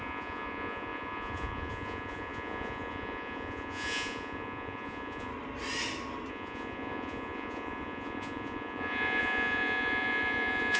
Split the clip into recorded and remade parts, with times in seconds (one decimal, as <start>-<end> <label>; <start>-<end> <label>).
0.0-5.3 remade; 5.3-6.3 recorded; 6.3-10.8 remade